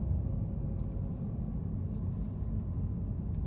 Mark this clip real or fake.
real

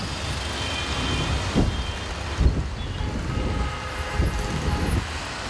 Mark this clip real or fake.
real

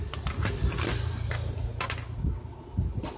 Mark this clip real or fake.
real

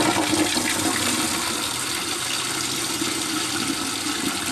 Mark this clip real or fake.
real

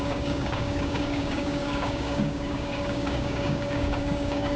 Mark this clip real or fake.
fake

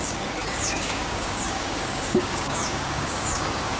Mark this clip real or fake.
fake